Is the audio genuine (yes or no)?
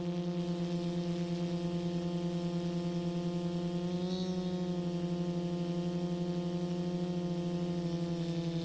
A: yes